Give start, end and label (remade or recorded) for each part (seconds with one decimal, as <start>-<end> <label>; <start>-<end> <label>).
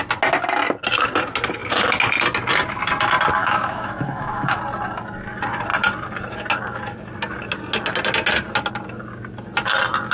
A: 0.0-3.4 recorded; 3.4-4.6 remade; 4.6-10.1 recorded